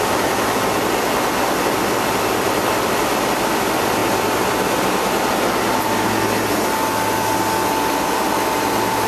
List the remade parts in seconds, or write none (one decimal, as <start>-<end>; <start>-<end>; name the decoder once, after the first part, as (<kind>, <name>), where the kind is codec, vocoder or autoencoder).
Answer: 0.0-4.0 (vocoder, BigVGAN v2); 8.0-9.1